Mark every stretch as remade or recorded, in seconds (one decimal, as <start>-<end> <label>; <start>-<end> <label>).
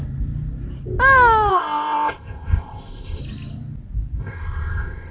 0.0-1.5 recorded; 1.5-3.2 remade; 3.2-4.2 recorded; 4.2-5.1 remade